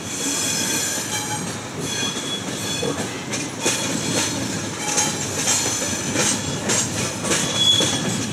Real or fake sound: real